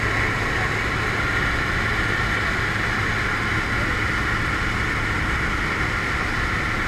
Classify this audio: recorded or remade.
recorded